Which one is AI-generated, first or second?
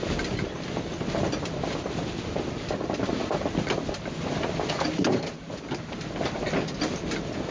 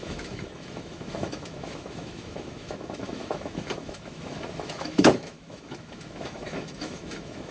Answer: second